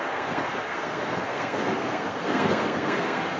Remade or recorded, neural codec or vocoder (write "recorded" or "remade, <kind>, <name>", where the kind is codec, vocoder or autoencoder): remade, codec, SNAC